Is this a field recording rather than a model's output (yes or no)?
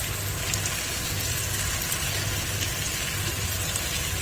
yes